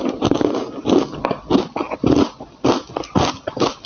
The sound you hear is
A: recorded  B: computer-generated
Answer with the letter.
A